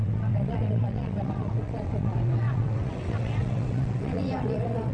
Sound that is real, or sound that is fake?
fake